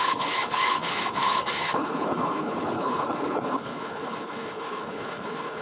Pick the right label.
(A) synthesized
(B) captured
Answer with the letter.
A